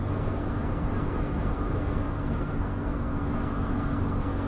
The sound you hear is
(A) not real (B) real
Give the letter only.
A